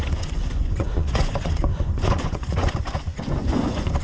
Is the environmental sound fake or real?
fake